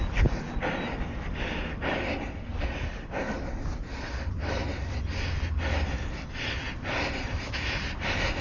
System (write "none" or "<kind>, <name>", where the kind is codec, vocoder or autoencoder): none